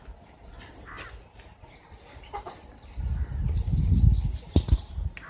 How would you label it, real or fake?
real